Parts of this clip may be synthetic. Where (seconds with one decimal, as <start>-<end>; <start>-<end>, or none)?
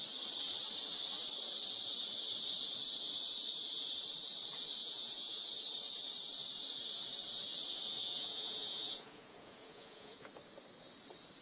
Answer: 4.8-5.4; 8.0-10.3